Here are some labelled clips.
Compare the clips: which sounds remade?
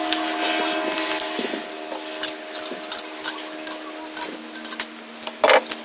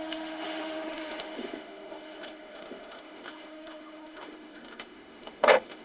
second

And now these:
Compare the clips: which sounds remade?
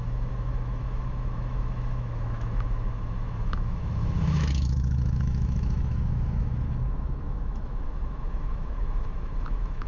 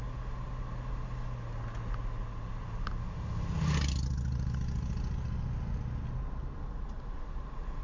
first